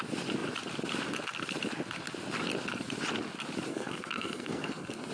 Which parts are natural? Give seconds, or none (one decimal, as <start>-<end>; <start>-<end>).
0.0-3.7